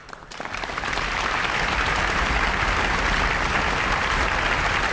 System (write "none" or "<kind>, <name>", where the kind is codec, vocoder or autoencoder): none